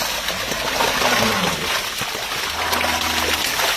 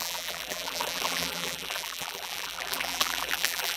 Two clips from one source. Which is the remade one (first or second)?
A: second